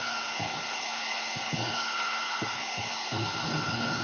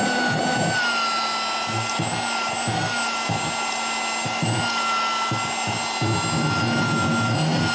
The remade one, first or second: first